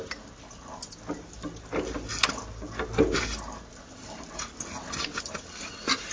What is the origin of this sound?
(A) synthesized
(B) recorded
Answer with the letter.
B